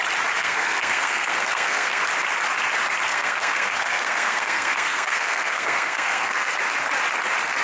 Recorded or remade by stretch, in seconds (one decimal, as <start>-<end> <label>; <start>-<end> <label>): 0.0-0.4 recorded; 0.4-2.0 remade; 2.0-3.1 recorded; 3.1-6.5 remade; 6.5-7.6 recorded